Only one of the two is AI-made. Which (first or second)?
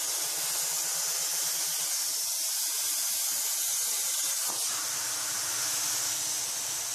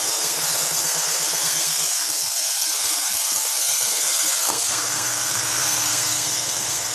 second